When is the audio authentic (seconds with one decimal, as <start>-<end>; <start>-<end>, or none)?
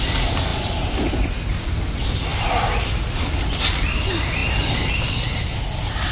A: 0.0-6.1